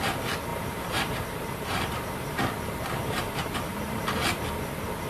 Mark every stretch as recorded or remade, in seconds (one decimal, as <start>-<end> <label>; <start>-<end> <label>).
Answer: 0.0-0.5 recorded; 0.5-2.4 remade; 2.4-3.0 recorded; 3.0-4.0 remade; 4.0-5.1 recorded